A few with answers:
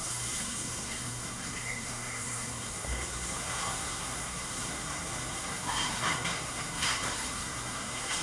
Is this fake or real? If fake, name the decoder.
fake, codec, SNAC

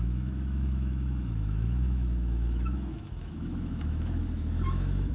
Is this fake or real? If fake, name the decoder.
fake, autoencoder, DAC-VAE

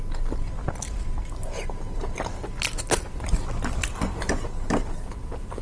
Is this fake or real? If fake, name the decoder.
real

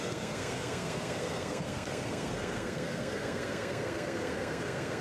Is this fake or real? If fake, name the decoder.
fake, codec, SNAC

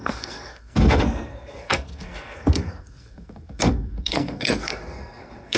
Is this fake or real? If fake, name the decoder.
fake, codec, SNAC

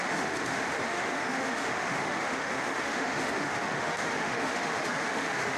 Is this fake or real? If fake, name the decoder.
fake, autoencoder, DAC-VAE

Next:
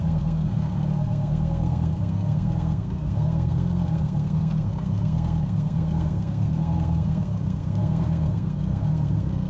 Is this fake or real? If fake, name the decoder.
fake, codec, SNAC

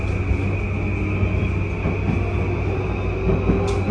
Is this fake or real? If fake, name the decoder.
real